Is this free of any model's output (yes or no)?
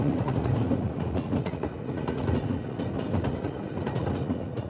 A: no